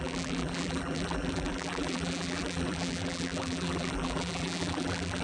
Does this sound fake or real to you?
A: fake